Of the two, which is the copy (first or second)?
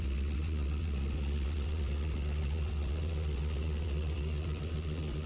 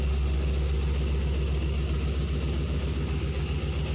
first